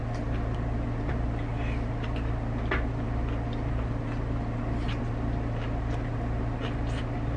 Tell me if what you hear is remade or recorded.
recorded